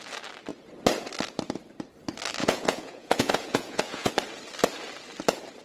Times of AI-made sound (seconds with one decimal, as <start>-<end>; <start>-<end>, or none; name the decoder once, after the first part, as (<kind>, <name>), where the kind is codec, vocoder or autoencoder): 2.4-4.1 (vocoder, Vocos)

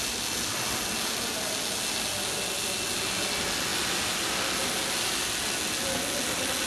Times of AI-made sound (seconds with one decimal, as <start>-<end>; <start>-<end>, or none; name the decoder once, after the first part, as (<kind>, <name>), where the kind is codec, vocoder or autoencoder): none

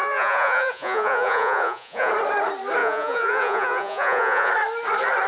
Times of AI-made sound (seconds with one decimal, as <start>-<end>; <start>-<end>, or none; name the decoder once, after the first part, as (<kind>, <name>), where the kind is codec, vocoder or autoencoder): 0.0-2.1 (vocoder, Vocos); 2.8-4.5

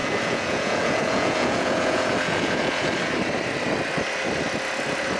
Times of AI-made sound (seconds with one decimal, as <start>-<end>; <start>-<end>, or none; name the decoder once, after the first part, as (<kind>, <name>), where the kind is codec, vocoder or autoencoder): 0.0-2.9 (vocoder, Vocos)

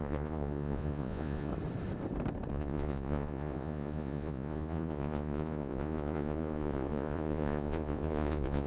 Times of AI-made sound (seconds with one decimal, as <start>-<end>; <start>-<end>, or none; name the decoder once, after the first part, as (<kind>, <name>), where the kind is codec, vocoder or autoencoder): 0.0-1.5 (vocoder, Vocos); 2.5-8.7

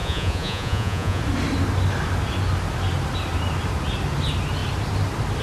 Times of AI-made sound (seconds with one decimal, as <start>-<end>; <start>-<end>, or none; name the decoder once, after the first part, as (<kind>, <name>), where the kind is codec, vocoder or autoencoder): 0.0-1.2 (vocoder, Vocos)